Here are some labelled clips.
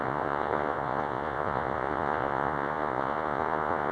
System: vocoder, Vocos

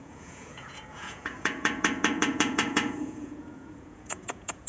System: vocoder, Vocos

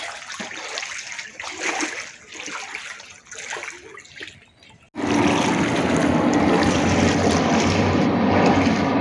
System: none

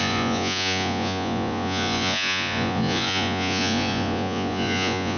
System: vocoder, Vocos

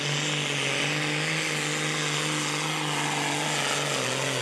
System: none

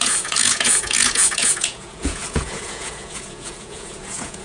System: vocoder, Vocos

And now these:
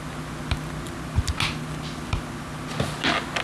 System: none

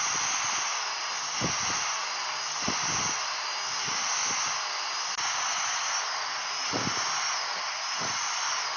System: none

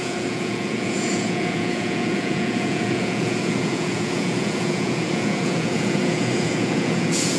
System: vocoder, Vocos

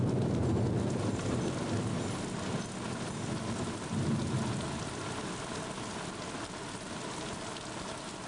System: none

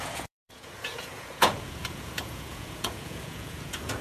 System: vocoder, Vocos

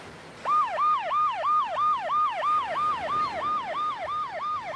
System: none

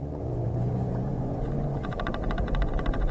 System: vocoder, Vocos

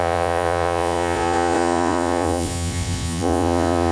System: vocoder, Vocos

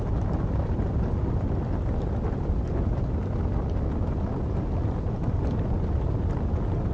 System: none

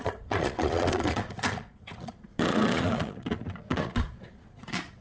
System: vocoder, Vocos